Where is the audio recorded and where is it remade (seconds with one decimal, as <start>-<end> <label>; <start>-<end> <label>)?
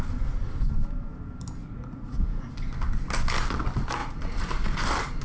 0.0-1.6 recorded; 1.6-2.5 remade; 2.5-4.0 recorded; 4.0-4.5 remade; 4.5-5.2 recorded